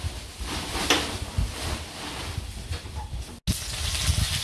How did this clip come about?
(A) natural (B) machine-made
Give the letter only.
A